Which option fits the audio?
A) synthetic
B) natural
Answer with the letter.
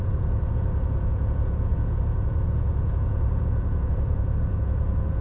A